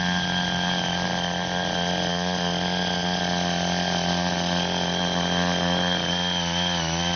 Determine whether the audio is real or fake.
real